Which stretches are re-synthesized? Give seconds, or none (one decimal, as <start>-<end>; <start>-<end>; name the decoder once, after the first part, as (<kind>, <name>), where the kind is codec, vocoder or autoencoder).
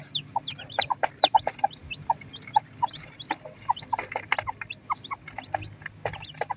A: none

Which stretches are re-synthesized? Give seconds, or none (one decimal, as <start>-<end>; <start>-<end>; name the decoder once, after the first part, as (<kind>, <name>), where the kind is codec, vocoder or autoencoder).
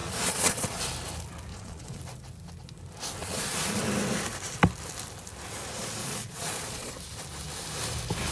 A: 0.0-0.8 (vocoder, Vocos); 1.5-2.0; 3.2-3.8; 6.0-6.9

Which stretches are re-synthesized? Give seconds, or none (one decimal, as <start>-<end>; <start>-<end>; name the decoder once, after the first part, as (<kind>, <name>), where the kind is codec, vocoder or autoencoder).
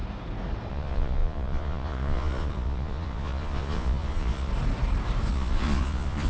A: 0.7-4.5 (vocoder, Vocos); 5.3-6.3